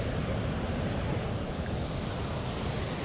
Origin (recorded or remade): recorded